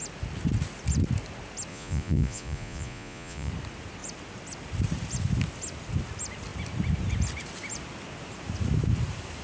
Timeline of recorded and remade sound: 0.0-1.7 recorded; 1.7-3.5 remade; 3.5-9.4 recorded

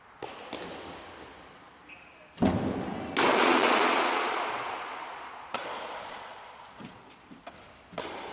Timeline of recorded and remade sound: 0.0-3.3 recorded; 3.3-7.2 remade; 7.2-8.3 recorded

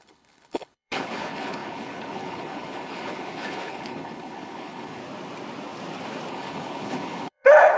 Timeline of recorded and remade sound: 0.0-5.0 remade; 5.0-6.3 recorded; 6.3-7.8 remade

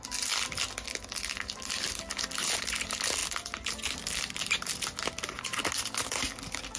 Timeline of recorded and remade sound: 0.0-6.8 recorded